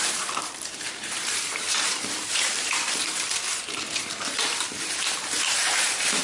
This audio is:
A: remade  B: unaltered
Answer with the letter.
A